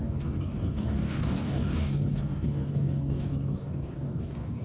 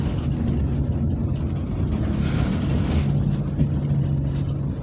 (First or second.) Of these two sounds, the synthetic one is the first